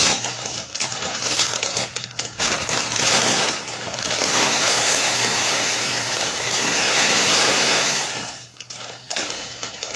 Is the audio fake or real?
fake